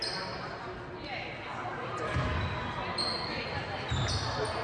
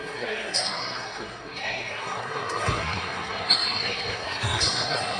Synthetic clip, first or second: second